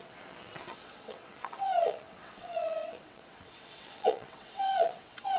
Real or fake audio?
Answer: fake